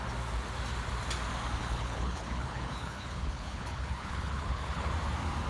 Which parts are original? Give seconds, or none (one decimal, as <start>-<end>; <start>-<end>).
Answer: 0.0-1.6; 4.9-5.5